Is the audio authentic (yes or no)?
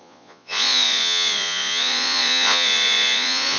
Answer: no